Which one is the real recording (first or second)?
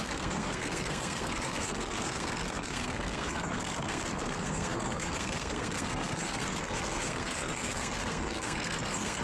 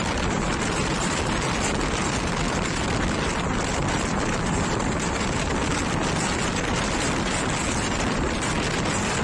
second